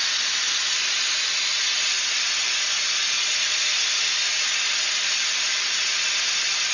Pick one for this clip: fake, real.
real